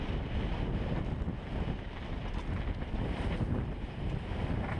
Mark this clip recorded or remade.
recorded